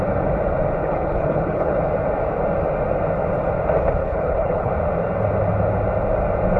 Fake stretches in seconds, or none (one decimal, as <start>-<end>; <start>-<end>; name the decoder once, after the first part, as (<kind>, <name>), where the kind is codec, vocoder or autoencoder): 0.8-1.8 (codec, HILCodec); 4.0-4.7